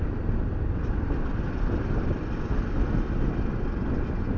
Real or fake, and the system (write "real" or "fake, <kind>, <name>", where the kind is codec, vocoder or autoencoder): real